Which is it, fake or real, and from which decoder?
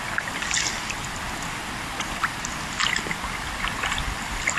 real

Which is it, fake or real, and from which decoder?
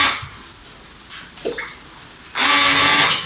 real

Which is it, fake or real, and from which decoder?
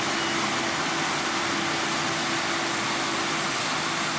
real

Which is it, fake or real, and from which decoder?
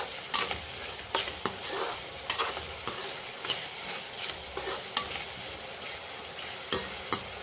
real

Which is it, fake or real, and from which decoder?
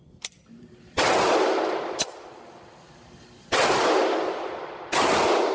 real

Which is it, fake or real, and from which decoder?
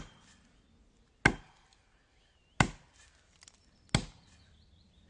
real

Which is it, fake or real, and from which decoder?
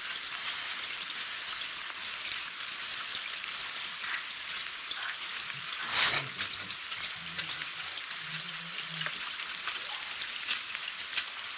real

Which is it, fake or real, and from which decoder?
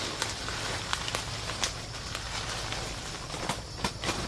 real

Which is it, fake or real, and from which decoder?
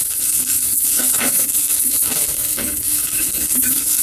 fake, codec, SNAC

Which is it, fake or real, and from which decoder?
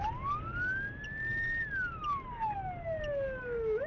real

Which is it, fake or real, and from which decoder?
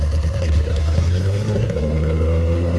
fake, codec, SNAC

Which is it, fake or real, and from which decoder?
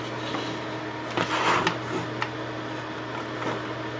real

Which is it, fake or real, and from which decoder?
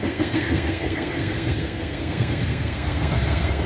fake, codec, SNAC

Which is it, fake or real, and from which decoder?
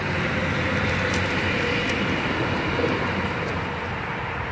real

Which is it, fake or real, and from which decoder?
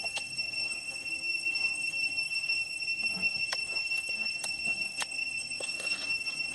fake, codec, SNAC